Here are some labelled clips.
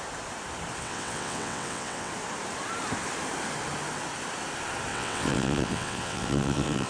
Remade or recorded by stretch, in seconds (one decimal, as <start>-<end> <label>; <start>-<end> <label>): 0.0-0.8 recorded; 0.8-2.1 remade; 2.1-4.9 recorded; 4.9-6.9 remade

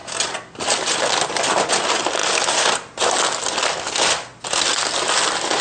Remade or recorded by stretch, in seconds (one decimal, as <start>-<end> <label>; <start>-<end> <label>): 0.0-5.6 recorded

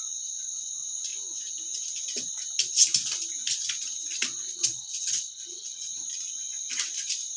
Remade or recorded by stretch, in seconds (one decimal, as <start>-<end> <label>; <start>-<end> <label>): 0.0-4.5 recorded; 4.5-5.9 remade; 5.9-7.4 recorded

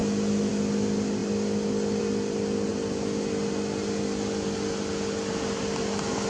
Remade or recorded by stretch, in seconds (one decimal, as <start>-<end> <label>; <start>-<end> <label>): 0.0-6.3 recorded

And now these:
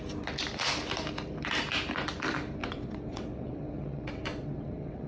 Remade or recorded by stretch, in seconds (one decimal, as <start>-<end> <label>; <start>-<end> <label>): 0.0-2.6 recorded; 2.6-5.1 remade

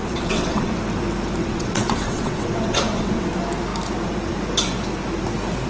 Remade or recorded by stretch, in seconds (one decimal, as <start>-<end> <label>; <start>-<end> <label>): 0.0-0.7 remade; 0.7-1.4 recorded; 1.4-3.3 remade; 3.3-5.7 recorded

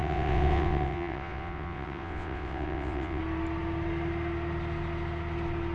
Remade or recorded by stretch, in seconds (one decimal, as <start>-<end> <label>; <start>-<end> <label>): 0.0-3.2 remade; 3.2-5.7 recorded